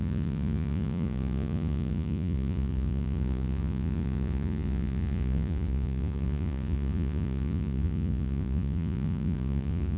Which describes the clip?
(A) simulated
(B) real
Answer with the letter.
A